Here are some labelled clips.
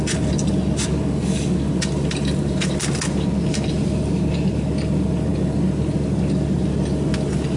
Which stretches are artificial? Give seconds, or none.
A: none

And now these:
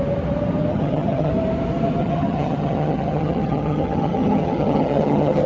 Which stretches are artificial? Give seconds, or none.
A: 0.7-1.3 (vocoder, HiFi-GAN); 2.0-5.5

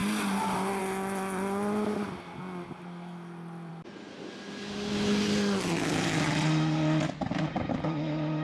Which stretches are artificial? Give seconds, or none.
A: none

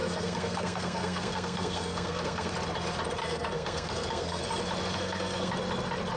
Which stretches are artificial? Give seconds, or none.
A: 0.0-2.5 (codec, SNAC); 3.2-4.4; 4.9-5.5